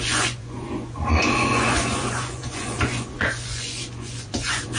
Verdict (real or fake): fake